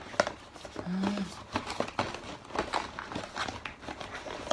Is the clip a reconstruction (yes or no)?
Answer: no